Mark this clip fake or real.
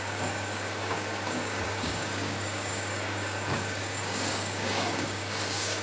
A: fake